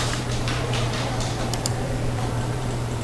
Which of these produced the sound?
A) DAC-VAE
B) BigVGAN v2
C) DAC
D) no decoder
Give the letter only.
B